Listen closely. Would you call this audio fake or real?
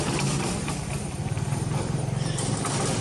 real